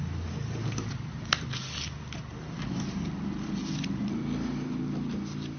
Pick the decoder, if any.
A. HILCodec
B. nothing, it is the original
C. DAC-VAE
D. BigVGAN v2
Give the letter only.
B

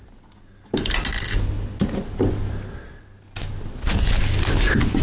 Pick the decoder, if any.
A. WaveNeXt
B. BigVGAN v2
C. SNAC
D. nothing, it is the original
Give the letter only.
D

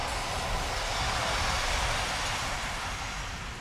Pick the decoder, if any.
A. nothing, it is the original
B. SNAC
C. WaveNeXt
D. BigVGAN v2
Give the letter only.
A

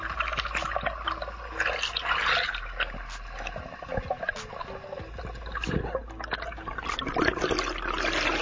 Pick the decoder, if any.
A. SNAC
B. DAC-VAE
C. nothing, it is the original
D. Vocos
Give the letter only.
C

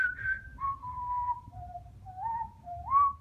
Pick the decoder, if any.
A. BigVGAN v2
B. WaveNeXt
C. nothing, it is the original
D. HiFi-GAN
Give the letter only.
A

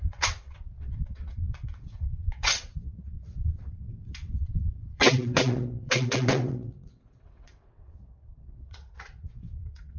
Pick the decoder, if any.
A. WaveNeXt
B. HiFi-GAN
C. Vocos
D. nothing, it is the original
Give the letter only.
A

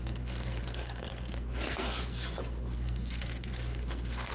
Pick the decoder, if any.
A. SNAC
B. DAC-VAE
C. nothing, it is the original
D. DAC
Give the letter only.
A